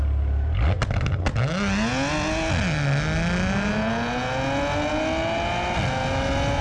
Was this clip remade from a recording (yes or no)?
no